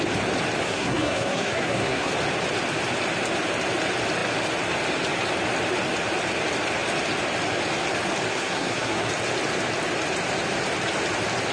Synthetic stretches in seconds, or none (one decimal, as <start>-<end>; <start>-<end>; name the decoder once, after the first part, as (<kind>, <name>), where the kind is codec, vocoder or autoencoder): 0.6-2.1 (codec, SNAC); 8.3-9.1